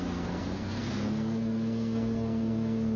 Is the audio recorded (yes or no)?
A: no